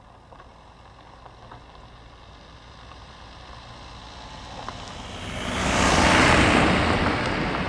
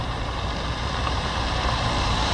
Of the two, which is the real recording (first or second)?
first